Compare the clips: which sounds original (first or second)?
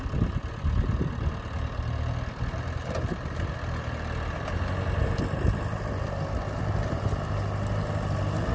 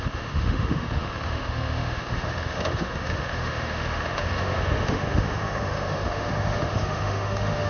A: first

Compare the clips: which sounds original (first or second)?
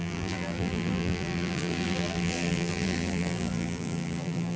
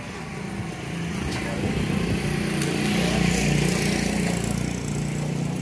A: second